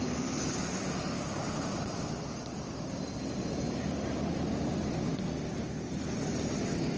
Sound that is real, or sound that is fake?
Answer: real